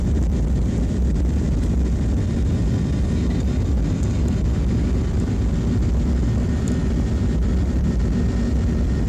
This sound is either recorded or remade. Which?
remade